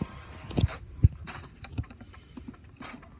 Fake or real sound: real